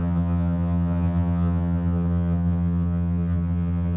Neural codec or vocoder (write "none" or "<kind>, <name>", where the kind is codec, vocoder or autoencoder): vocoder, HiFi-GAN